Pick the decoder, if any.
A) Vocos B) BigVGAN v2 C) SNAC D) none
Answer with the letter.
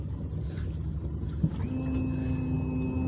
D